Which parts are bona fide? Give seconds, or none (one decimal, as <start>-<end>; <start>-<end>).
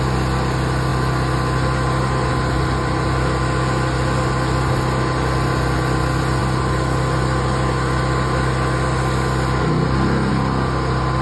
0.0-11.2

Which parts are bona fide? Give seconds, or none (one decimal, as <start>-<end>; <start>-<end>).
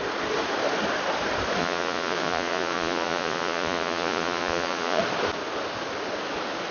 0.0-1.6; 5.0-6.7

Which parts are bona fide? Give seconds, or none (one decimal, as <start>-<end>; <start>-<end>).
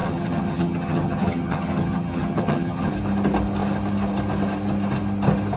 2.9-5.6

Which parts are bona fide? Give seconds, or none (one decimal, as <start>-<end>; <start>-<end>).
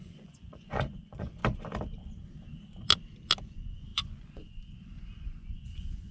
1.4-3.4